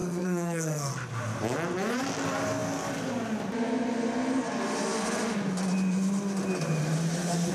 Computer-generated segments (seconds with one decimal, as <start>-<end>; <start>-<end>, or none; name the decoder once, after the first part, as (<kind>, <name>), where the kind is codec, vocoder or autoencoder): 0.0-0.9 (codec, SNAC)